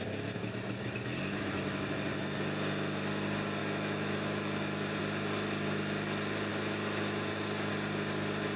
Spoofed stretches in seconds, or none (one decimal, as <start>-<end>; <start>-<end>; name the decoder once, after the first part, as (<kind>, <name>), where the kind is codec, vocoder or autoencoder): 0.4-1.2 (autoencoder, DAC-VAE); 3.6-5.0; 6.5-7.7